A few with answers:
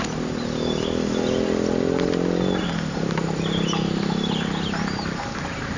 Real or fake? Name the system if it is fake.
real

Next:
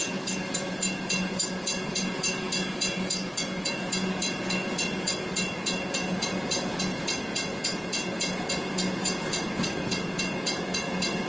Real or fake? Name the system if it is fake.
fake, vocoder, Vocos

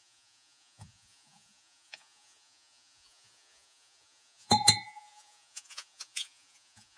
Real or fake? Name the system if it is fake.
fake, vocoder, Vocos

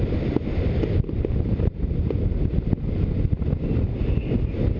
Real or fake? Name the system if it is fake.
real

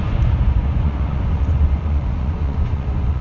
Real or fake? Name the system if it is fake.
fake, vocoder, Vocos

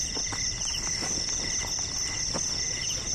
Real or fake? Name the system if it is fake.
real